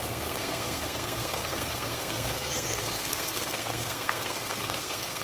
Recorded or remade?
remade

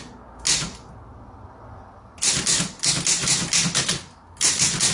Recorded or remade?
recorded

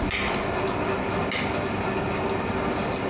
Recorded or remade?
recorded